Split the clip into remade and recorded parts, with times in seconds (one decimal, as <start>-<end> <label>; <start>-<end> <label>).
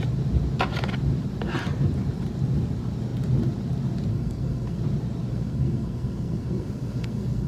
0.0-4.1 recorded; 4.1-4.8 remade; 4.8-5.3 recorded; 5.3-7.5 remade